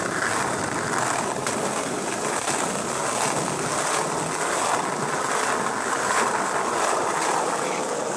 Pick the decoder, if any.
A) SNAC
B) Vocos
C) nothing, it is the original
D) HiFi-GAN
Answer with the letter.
C